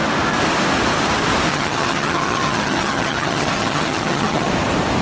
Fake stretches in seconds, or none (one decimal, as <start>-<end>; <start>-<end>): 1.5-4.5